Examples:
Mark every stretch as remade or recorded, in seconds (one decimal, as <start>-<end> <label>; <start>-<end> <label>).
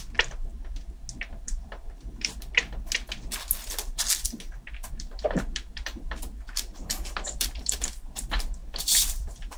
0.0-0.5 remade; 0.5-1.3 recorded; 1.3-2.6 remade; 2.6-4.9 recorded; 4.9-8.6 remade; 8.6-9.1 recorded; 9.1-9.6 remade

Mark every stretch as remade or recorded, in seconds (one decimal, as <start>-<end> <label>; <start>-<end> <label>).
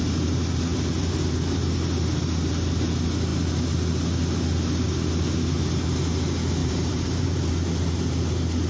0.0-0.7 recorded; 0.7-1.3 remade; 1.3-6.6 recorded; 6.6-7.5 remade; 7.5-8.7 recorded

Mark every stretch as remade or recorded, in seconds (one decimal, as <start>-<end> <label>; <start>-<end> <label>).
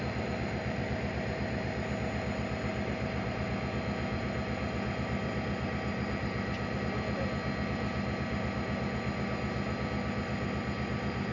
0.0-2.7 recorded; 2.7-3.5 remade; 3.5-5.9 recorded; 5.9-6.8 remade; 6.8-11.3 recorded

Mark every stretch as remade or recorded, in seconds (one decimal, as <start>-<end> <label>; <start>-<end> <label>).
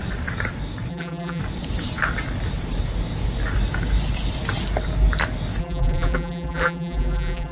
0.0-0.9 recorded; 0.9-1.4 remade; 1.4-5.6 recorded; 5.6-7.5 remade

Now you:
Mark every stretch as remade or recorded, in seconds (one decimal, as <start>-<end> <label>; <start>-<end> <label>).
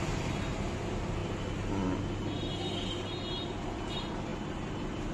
0.0-4.3 recorded; 4.3-5.1 remade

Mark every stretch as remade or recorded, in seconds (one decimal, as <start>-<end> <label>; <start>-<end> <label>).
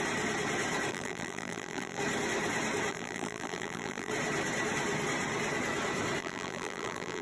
0.0-0.9 recorded; 0.9-2.0 remade; 2.0-2.9 recorded; 2.9-4.1 remade; 4.1-6.2 recorded; 6.2-7.2 remade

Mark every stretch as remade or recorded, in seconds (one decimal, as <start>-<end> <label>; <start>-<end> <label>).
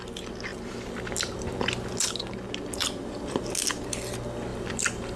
0.0-2.8 recorded; 2.8-3.5 remade; 3.5-4.5 recorded; 4.5-5.2 remade